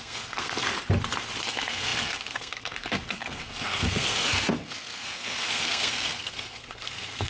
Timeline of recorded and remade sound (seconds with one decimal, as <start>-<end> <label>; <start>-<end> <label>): 0.0-0.7 remade; 0.7-1.4 recorded; 1.4-7.3 remade